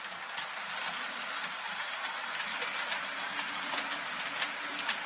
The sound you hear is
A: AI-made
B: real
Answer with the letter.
B